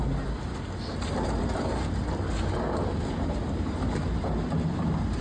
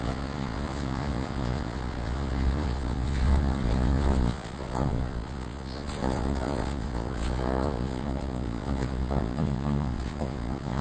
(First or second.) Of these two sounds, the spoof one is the second